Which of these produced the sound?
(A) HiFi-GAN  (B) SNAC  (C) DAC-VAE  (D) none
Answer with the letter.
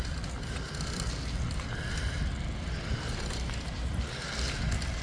D